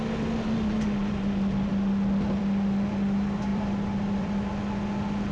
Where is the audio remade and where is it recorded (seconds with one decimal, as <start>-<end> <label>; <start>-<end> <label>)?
0.0-3.5 recorded; 3.5-4.5 remade; 4.5-5.3 recorded